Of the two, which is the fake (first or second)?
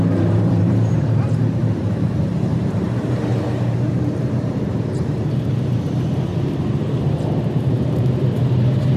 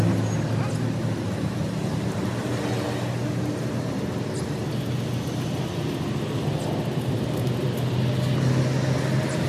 first